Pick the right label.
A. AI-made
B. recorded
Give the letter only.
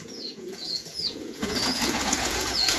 A